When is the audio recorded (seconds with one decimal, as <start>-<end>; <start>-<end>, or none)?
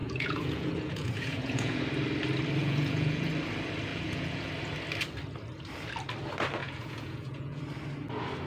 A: 1.8-2.6; 3.3-3.9; 4.5-6.6; 7.6-8.5